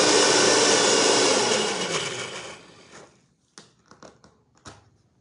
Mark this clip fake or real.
real